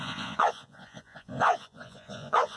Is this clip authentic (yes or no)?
no